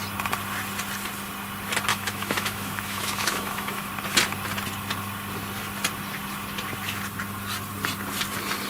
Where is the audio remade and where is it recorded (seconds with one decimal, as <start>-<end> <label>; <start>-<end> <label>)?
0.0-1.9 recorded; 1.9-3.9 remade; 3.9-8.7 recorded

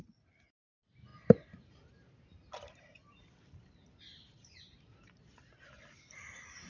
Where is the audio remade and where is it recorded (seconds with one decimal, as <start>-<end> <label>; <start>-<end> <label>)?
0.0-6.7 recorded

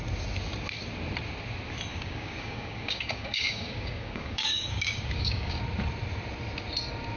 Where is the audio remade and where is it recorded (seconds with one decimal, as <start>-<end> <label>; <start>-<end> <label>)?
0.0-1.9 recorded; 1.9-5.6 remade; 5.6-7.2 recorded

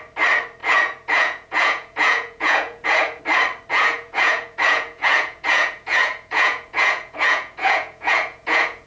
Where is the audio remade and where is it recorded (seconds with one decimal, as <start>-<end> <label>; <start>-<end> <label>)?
0.0-0.6 recorded; 0.6-3.2 remade; 3.2-3.7 recorded; 3.7-8.9 remade

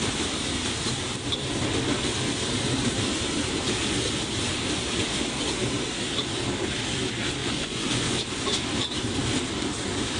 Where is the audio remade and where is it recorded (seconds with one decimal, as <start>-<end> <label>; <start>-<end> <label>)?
0.0-7.4 recorded; 7.4-8.2 remade; 8.2-10.2 recorded

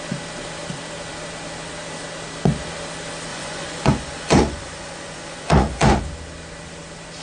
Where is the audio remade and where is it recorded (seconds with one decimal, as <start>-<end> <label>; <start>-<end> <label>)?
0.0-3.3 recorded; 3.3-6.0 remade; 6.0-7.2 recorded

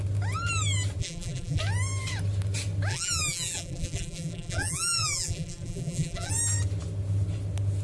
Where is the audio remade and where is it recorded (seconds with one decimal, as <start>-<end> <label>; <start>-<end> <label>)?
0.0-1.0 recorded; 1.0-1.6 remade; 1.6-2.9 recorded; 2.9-6.3 remade; 6.3-7.8 recorded

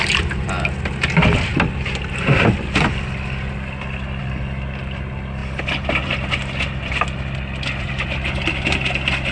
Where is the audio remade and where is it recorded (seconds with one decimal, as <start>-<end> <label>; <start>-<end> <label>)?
0.0-9.3 recorded